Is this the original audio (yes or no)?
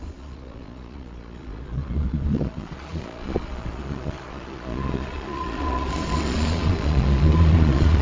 no